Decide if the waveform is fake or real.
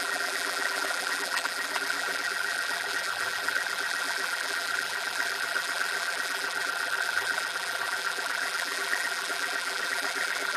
fake